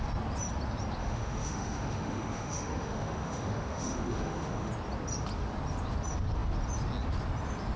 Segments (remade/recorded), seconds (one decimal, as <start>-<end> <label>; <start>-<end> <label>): 0.0-1.0 recorded; 1.0-4.7 remade; 4.7-7.8 recorded